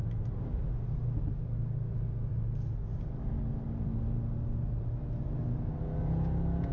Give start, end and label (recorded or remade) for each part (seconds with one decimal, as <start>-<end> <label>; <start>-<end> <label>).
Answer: 0.0-6.7 recorded